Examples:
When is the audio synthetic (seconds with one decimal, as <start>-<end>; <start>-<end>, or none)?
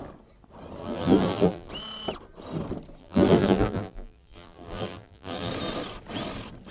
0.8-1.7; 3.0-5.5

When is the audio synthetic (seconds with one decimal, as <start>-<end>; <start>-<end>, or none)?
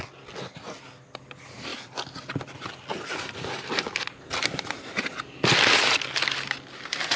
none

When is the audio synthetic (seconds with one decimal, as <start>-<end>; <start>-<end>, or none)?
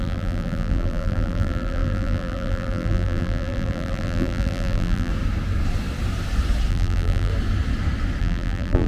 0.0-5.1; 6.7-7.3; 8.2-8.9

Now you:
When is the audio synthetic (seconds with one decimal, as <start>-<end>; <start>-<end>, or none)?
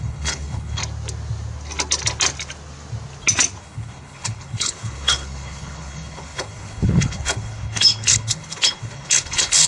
0.0-0.8; 3.6-9.7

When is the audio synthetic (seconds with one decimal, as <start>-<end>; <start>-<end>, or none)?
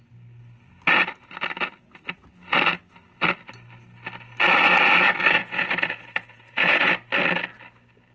5.4-6.9